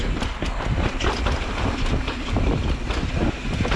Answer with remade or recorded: recorded